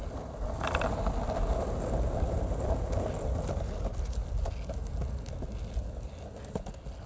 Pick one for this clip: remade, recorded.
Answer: recorded